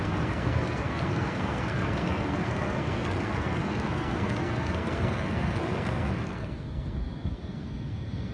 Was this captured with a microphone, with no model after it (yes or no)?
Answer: no